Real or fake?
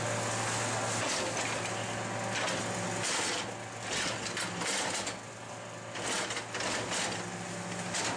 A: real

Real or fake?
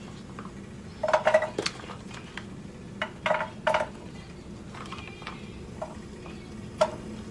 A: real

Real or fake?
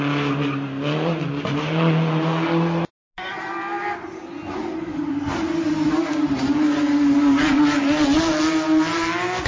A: real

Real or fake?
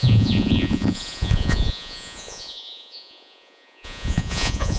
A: fake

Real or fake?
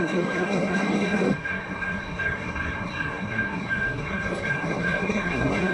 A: fake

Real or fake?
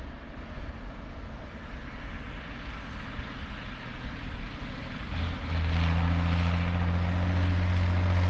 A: real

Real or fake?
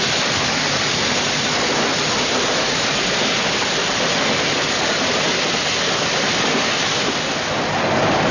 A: real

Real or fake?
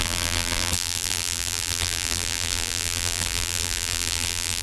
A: fake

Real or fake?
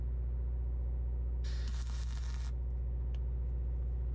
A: real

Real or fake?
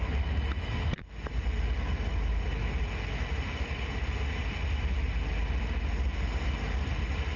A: real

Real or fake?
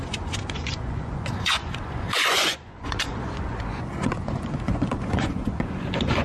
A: fake